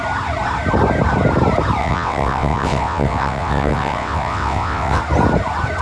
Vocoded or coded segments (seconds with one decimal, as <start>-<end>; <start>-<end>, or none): 1.8-5.0